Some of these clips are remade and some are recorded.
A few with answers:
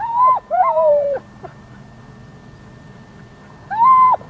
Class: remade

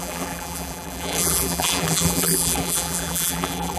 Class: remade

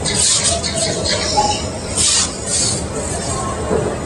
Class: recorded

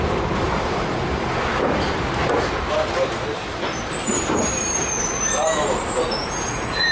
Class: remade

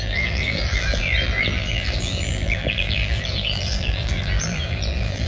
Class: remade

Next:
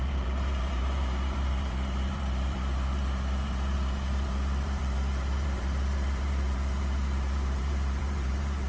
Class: remade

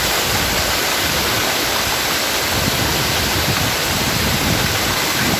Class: recorded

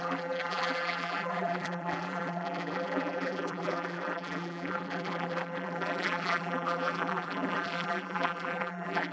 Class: remade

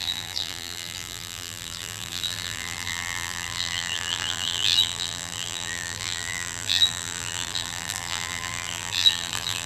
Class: remade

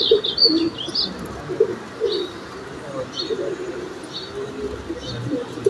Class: recorded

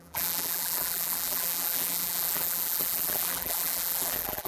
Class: remade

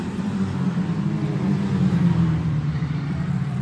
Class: remade